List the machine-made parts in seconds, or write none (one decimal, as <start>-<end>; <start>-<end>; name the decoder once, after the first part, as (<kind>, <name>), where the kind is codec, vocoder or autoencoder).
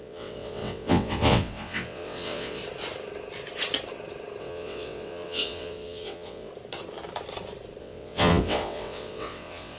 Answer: 0.0-2.6 (vocoder, WaveNeXt); 4.4-6.5; 7.8-9.8